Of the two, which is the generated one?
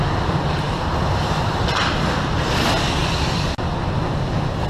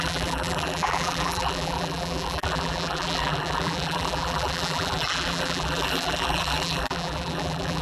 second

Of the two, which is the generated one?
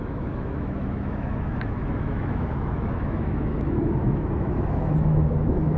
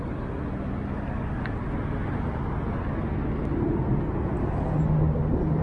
first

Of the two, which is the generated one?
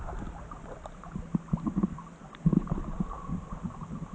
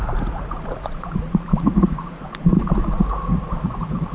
second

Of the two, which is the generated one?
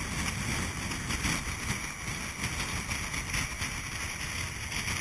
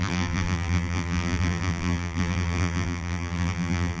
second